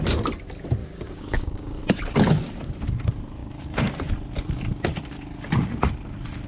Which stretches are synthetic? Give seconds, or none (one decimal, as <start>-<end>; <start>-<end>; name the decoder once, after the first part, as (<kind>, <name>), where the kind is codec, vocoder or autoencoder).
0.8-1.8 (codec, DAC); 3.4-4.0